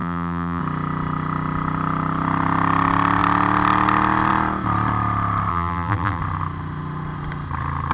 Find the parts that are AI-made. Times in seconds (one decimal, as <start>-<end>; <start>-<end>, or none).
0.0-0.6; 5.5-6.2